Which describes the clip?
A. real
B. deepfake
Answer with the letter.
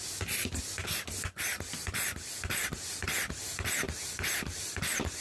A